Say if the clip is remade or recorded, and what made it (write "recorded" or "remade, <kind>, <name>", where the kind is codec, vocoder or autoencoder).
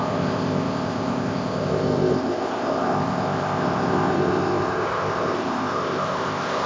remade, codec, ZipCodec